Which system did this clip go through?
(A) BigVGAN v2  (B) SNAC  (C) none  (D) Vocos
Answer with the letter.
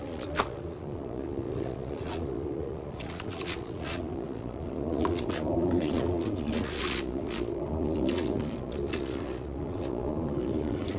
D